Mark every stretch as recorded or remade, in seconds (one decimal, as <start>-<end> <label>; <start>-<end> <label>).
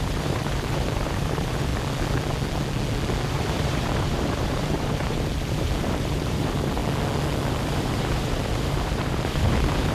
0.0-1.7 remade; 1.7-3.3 recorded; 3.3-6.8 remade; 6.8-7.5 recorded; 7.5-9.9 remade